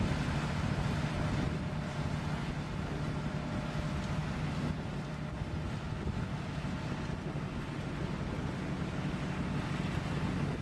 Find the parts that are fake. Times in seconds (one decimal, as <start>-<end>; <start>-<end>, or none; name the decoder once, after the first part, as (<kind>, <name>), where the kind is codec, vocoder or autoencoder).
none